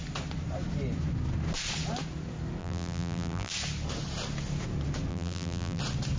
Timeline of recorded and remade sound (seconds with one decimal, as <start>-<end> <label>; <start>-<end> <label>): 0.0-2.6 recorded; 2.6-3.5 remade; 3.5-5.1 recorded; 5.1-5.8 remade; 5.8-6.2 recorded